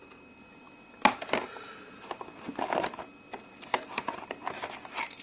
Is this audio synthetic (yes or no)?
no